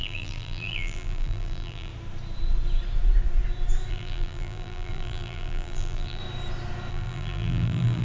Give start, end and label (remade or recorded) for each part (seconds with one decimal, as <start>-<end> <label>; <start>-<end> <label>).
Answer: 0.0-1.9 remade; 1.9-3.9 recorded; 3.9-6.2 remade; 6.2-6.9 recorded; 6.9-8.0 remade